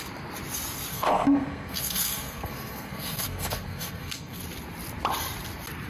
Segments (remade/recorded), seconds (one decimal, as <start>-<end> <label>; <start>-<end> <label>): 0.0-0.9 recorded; 0.9-4.4 remade; 4.4-5.9 recorded